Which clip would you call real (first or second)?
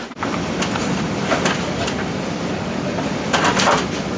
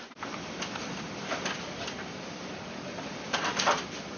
first